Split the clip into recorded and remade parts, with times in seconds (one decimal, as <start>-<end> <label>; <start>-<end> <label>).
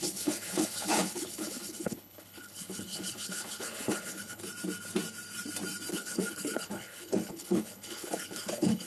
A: 0.0-4.4 remade; 4.4-5.9 recorded; 5.9-8.9 remade